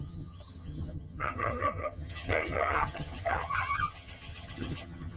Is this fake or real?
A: fake